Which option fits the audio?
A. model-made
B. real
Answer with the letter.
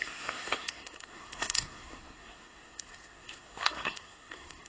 A